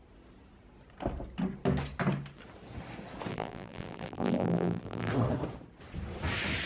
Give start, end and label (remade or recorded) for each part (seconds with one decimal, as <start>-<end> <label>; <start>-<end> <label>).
0.0-3.3 recorded; 3.3-5.1 remade; 5.1-6.7 recorded

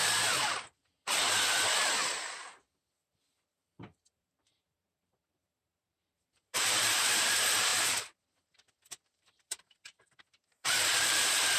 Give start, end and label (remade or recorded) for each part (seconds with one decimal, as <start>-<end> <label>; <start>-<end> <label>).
0.0-3.4 recorded; 3.4-11.6 remade

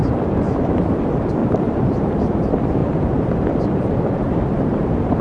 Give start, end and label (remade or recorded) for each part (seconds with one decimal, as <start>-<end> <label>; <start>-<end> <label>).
0.0-0.9 remade; 0.9-1.4 recorded; 1.4-2.2 remade; 2.2-2.8 recorded; 2.8-5.2 remade

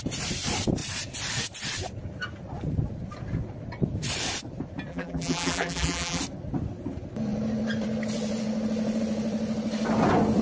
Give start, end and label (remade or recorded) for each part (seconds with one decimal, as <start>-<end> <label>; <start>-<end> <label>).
0.0-4.9 recorded; 4.9-6.2 remade; 6.2-10.4 recorded

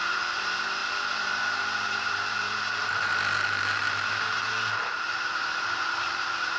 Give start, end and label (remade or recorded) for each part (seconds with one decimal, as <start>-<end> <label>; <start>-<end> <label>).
0.0-3.1 remade; 3.1-4.5 recorded; 4.5-6.6 remade

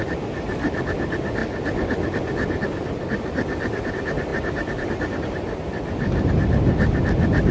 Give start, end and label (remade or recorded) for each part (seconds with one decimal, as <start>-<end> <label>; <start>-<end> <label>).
0.0-4.3 recorded; 4.3-6.3 remade; 6.3-7.5 recorded

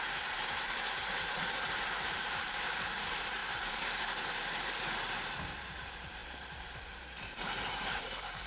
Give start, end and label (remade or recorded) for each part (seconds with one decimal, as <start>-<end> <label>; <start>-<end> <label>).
0.0-8.5 remade

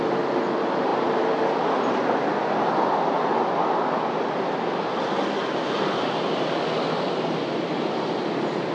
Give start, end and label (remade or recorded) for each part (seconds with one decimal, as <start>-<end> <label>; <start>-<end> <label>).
0.0-8.7 recorded